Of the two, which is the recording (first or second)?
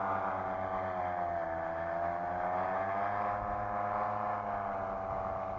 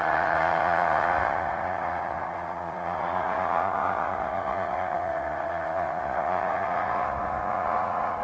first